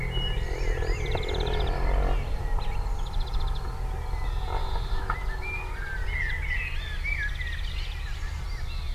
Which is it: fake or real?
real